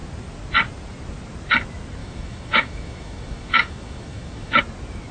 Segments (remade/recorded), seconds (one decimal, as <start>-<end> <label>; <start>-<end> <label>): 0.0-2.0 recorded; 2.0-4.6 remade; 4.6-5.1 recorded

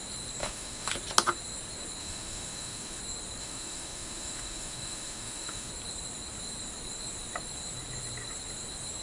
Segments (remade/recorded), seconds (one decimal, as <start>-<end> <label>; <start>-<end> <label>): 0.0-0.4 recorded; 0.4-0.9 remade; 0.9-2.0 recorded; 2.0-3.0 remade; 3.0-3.4 recorded; 3.4-5.7 remade; 5.7-9.0 recorded

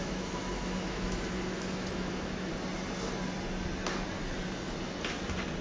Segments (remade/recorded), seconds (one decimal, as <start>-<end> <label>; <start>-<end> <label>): 0.0-2.5 remade; 2.5-5.6 recorded

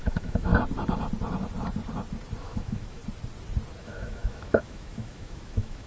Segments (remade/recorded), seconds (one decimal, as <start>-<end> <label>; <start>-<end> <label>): 0.0-0.5 remade; 0.5-2.4 recorded; 2.4-3.0 remade; 3.0-3.8 recorded; 3.8-5.9 remade

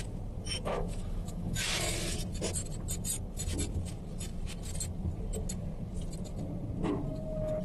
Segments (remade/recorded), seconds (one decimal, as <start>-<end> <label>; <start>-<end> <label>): 0.0-0.7 recorded; 0.7-2.1 remade; 2.1-7.6 recorded

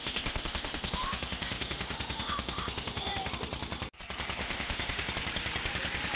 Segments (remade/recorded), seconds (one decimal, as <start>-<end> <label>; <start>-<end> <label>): 0.0-3.3 remade; 3.3-4.4 recorded; 4.4-5.1 remade; 5.1-6.2 recorded

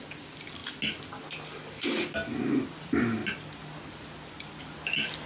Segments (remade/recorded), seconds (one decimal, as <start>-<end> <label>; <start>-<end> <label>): 0.0-5.3 recorded

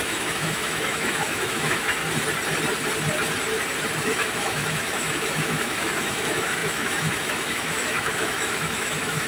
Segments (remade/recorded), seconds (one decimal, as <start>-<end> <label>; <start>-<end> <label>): 0.0-2.0 remade; 2.0-4.0 recorded; 4.0-9.3 remade